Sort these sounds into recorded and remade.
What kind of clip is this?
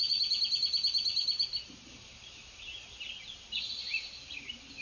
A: recorded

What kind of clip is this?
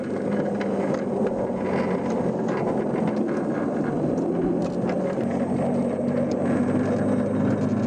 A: recorded